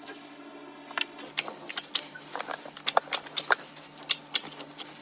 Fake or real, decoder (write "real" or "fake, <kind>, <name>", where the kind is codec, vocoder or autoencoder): real